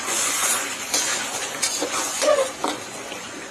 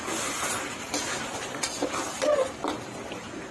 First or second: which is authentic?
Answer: second